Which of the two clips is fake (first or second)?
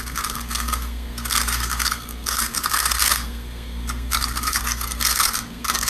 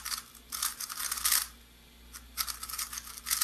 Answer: first